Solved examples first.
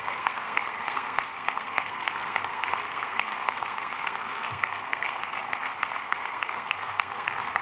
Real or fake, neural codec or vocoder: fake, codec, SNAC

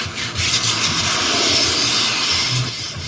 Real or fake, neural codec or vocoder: real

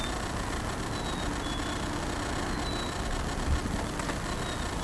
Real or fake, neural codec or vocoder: real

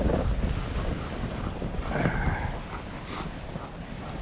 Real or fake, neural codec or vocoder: real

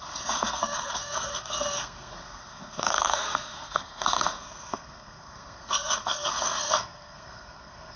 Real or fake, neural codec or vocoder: fake, codec, SNAC